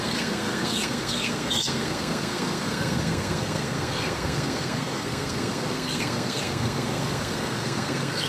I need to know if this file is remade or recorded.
remade